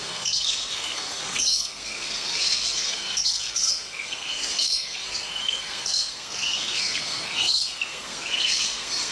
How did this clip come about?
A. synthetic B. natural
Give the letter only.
A